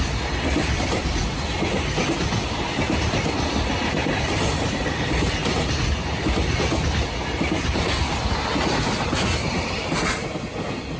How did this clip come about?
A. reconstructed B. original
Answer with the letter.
B